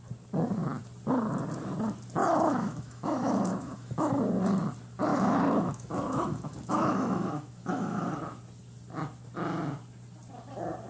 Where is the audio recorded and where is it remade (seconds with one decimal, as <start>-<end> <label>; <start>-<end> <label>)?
0.0-2.2 recorded; 2.2-4.2 remade; 4.2-5.1 recorded; 5.1-8.1 remade; 8.1-10.9 recorded